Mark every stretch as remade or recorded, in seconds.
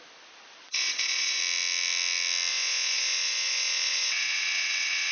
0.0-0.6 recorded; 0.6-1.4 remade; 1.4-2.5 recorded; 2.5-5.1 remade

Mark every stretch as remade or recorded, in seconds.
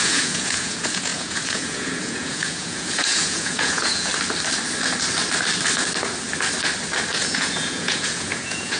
0.0-4.1 remade; 4.1-7.2 recorded; 7.2-8.8 remade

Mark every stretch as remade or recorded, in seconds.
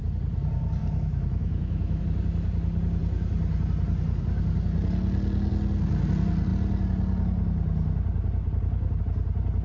0.0-0.8 recorded; 0.8-2.0 remade; 2.0-9.6 recorded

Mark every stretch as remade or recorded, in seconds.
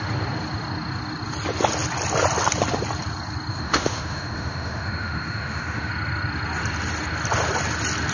0.0-3.5 recorded; 3.5-5.9 remade; 5.9-8.1 recorded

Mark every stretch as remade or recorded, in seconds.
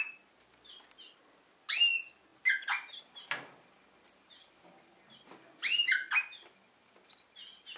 0.0-7.8 recorded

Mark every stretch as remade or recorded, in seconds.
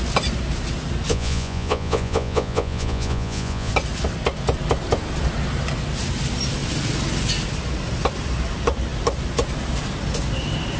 0.0-1.1 recorded; 1.1-3.7 remade; 3.7-10.8 recorded